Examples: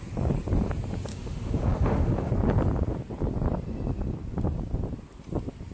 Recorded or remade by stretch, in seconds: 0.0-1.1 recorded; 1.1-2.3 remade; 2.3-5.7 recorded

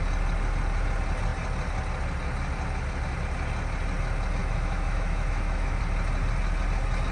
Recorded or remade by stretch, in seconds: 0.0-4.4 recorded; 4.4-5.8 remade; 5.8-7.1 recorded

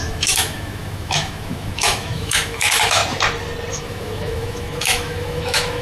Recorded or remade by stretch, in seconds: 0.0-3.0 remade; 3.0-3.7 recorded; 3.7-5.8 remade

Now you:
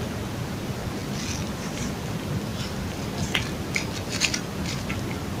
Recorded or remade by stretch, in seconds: 0.0-5.4 recorded

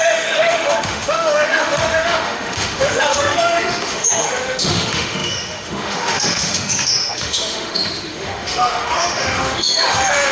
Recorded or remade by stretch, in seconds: 0.0-10.3 remade

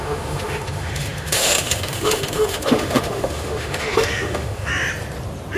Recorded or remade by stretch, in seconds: 0.0-4.7 remade; 4.7-5.6 recorded

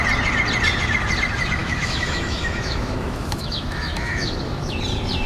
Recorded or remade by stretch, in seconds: 0.0-1.6 recorded; 1.6-4.8 remade; 4.8-5.3 recorded

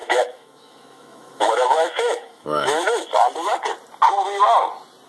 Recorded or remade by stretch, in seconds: 0.0-3.1 remade; 3.1-5.1 recorded